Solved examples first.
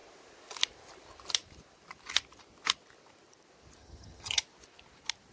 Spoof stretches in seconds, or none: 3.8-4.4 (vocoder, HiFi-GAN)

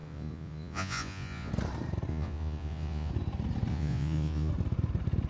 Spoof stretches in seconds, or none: 0.0-1.5 (vocoder, Vocos); 2.1-3.1; 3.7-4.5